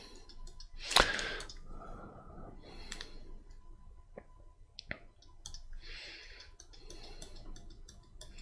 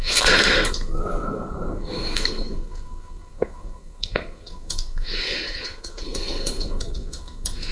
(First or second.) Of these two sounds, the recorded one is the first